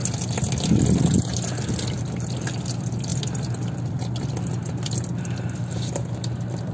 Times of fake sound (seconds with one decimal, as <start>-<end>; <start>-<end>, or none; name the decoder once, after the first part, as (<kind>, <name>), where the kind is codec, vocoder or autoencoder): none